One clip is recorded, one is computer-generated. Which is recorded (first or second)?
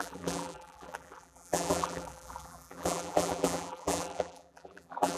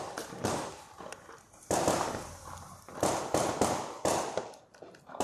second